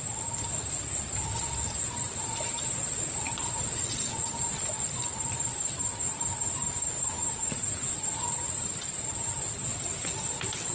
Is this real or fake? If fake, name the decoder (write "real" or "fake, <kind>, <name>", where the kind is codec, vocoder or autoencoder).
fake, vocoder, BigVGAN v2